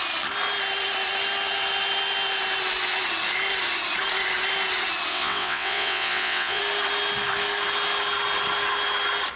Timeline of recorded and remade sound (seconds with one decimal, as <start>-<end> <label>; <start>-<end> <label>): 0.0-5.1 recorded; 5.1-6.6 remade; 6.6-9.4 recorded